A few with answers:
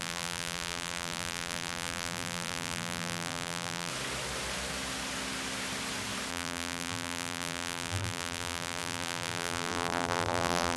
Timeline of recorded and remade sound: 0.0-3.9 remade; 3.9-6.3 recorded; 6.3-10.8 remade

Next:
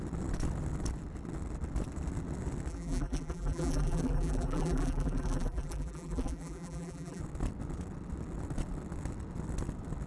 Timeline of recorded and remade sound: 0.0-2.7 recorded; 2.7-7.2 remade; 7.2-10.1 recorded

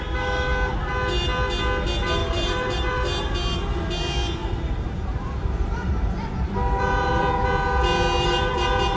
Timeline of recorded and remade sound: 0.0-2.2 recorded; 2.2-3.0 remade; 3.0-4.4 recorded; 4.4-7.2 remade; 7.2-9.0 recorded

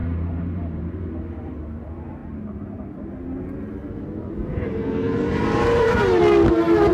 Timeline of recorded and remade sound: 0.0-1.0 remade; 1.0-2.2 recorded; 2.2-3.1 remade; 3.1-4.5 recorded; 4.5-6.2 remade; 6.2-6.9 recorded